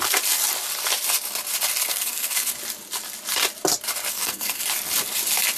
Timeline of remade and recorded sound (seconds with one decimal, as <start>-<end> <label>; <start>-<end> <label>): 0.0-1.9 recorded; 1.9-2.5 remade; 2.5-4.1 recorded; 4.1-4.6 remade; 4.6-5.6 recorded